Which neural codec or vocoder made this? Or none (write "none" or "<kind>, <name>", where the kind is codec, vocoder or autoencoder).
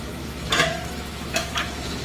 autoencoder, DAC-VAE